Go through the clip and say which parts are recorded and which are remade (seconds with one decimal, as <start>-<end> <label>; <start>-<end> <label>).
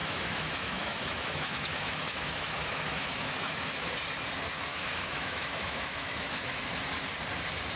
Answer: 0.0-3.9 remade; 3.9-4.7 recorded; 4.7-6.7 remade; 6.7-7.8 recorded